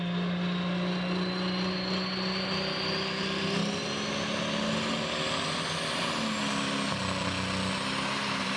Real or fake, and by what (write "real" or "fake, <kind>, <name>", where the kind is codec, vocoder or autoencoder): real